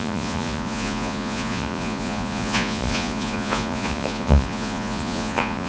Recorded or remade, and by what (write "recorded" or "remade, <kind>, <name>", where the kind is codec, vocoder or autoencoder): remade, vocoder, Vocos